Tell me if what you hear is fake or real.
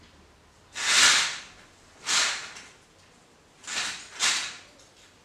fake